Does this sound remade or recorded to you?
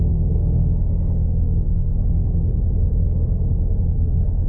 remade